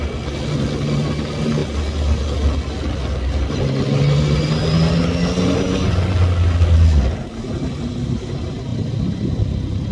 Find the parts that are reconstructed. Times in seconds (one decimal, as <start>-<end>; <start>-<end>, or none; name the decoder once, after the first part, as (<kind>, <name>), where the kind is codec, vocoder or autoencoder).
8.7-9.3 (vocoder, BigVGAN v2)